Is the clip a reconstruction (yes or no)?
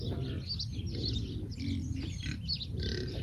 no